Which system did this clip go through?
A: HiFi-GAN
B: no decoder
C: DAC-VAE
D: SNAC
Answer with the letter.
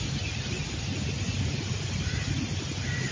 B